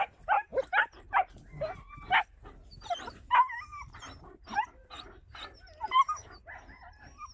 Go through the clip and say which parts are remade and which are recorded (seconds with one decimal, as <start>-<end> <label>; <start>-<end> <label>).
0.0-3.7 recorded; 3.7-4.7 remade; 4.7-7.3 recorded